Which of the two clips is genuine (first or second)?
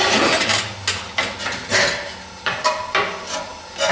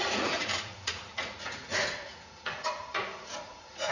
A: first